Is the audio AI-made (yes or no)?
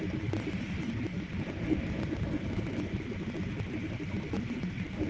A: no